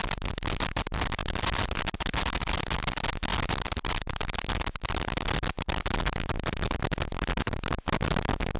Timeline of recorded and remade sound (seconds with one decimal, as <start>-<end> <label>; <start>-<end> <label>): 0.0-8.6 recorded